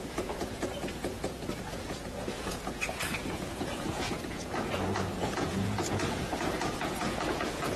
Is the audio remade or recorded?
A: remade